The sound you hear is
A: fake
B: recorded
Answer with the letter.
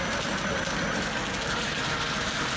B